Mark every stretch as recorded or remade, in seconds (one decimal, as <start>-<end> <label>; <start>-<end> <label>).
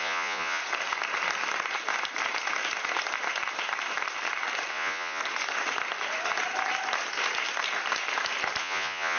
0.0-0.6 remade; 0.6-4.7 recorded; 4.7-5.2 remade; 5.2-8.6 recorded; 8.6-9.2 remade